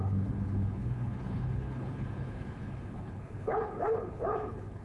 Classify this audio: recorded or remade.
remade